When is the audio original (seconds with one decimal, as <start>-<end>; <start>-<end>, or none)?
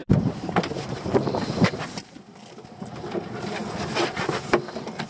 2.2-5.1